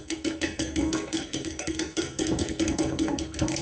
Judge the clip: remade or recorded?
remade